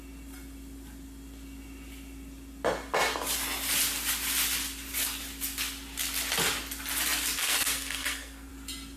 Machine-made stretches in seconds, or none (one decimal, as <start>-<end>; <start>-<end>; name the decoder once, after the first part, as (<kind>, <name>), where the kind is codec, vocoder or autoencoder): 7.4-8.5 (codec, SNAC)